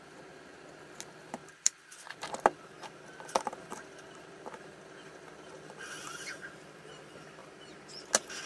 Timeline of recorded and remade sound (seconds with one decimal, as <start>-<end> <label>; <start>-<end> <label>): 0.0-1.4 recorded; 1.4-5.8 remade; 5.8-8.5 recorded